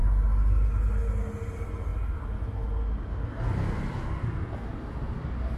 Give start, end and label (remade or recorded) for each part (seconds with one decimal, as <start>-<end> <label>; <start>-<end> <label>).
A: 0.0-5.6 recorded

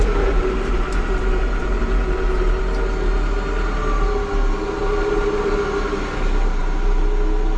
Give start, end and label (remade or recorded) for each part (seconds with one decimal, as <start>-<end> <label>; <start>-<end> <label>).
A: 0.0-2.6 remade; 2.6-4.8 recorded; 4.8-5.5 remade; 5.5-7.6 recorded

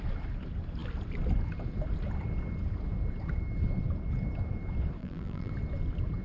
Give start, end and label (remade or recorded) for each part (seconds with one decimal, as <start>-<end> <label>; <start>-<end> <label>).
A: 0.0-5.0 recorded; 5.0-5.5 remade; 5.5-6.2 recorded

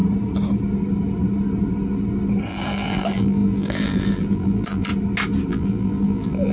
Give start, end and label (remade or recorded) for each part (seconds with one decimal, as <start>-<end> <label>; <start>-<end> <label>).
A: 0.0-2.5 recorded; 2.5-4.9 remade; 4.9-5.5 recorded; 5.5-6.5 remade

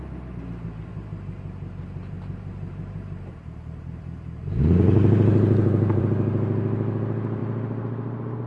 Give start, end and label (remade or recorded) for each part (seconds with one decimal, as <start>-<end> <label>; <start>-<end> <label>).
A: 0.0-0.9 recorded; 0.9-6.0 remade; 6.0-8.5 recorded

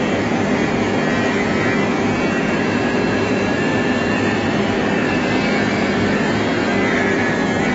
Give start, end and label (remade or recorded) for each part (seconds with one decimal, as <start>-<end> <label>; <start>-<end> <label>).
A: 0.0-0.6 remade; 0.6-2.4 recorded; 2.4-6.6 remade; 6.6-7.7 recorded

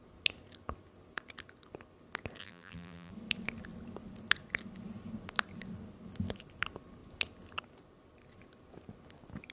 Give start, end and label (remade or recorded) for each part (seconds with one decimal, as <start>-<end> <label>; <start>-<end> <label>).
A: 0.0-2.4 recorded; 2.4-3.1 remade; 3.1-9.5 recorded